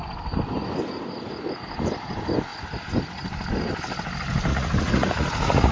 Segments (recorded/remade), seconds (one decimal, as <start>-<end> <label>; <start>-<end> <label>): 0.0-4.5 recorded; 4.5-5.7 remade